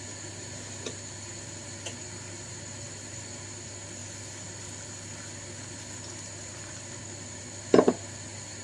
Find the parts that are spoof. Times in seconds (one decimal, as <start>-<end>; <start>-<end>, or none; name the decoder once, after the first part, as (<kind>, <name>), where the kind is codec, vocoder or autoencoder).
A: none